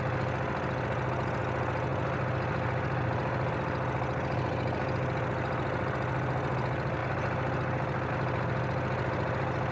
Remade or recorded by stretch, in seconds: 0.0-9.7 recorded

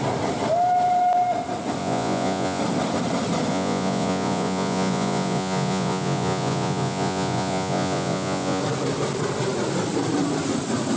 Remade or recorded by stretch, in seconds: 0.0-1.8 recorded; 1.8-2.6 remade; 2.6-3.5 recorded; 3.5-8.6 remade; 8.6-11.0 recorded

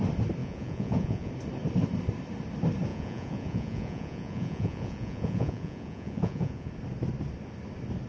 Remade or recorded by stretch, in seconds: 0.0-0.4 recorded; 0.4-1.3 remade; 1.3-2.9 recorded; 2.9-6.7 remade; 6.7-8.1 recorded

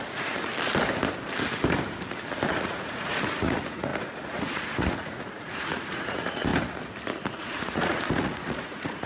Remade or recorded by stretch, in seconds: 0.0-0.5 remade; 0.5-2.5 recorded; 2.5-6.5 remade; 6.5-7.3 recorded; 7.3-9.1 remade

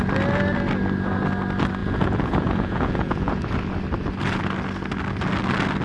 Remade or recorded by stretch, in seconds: 0.0-1.8 recorded; 1.8-3.3 remade; 3.3-5.8 recorded